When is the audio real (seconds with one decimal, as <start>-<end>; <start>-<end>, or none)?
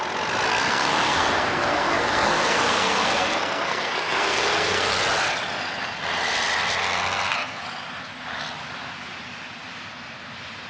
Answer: 0.0-0.5; 5.0-6.8; 7.6-10.7